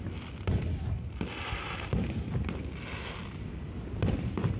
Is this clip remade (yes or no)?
no